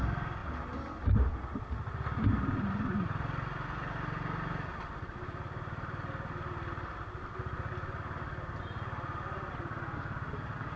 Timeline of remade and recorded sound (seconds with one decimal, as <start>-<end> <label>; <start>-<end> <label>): 0.0-10.8 recorded